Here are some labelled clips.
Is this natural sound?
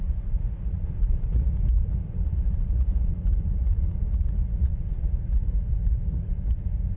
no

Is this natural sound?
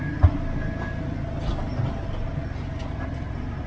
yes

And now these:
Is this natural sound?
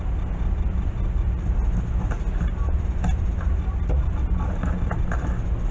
yes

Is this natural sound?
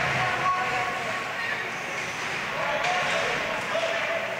yes